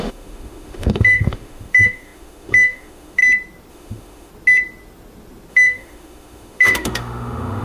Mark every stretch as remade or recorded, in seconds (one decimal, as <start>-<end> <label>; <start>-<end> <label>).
0.0-3.2 remade; 3.2-3.7 recorded; 3.7-4.3 remade; 4.3-5.5 recorded; 5.5-7.6 remade